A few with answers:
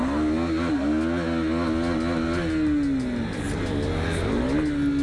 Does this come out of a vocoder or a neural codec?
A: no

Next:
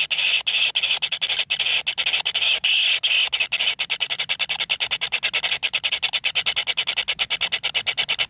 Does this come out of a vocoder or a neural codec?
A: no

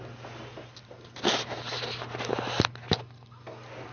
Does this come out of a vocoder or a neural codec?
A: no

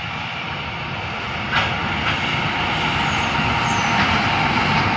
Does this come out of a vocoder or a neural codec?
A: no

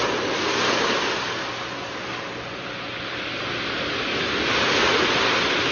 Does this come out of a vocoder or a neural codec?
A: no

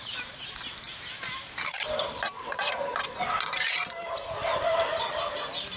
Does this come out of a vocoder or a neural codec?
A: no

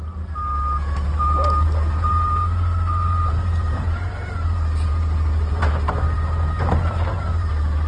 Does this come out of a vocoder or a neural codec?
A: yes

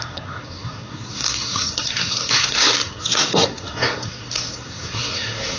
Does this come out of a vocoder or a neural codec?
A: yes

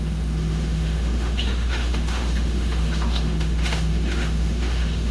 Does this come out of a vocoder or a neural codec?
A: yes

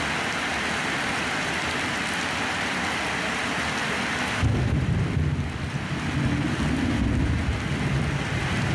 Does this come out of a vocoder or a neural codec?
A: no